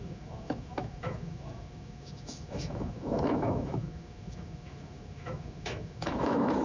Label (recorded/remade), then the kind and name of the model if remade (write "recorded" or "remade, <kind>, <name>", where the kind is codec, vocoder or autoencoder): remade, autoencoder, DAC-VAE